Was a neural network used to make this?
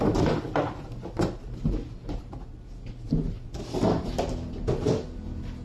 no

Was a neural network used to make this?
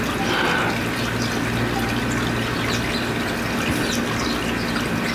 no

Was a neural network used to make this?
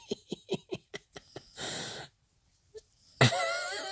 no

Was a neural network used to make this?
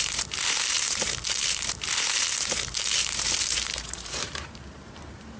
yes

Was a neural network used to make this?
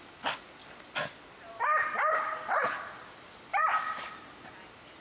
no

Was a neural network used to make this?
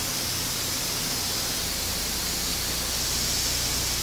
no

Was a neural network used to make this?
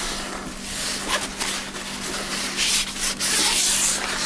no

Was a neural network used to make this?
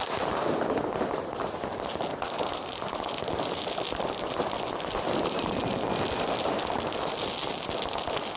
no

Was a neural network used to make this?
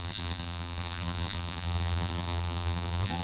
yes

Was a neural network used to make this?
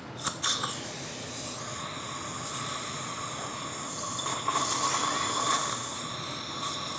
no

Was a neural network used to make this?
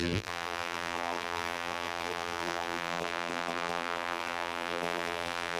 yes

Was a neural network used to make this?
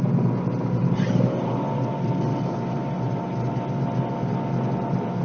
no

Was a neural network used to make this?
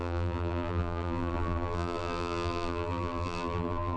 yes